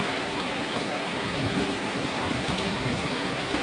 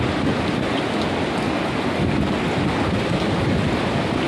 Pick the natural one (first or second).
second